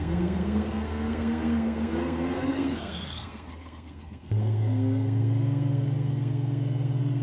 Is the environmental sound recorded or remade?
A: remade